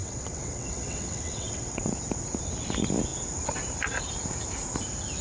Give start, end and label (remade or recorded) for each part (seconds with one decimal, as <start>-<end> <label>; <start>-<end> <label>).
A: 0.0-1.9 remade; 1.9-5.2 recorded